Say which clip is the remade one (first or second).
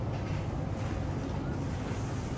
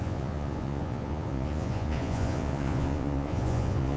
second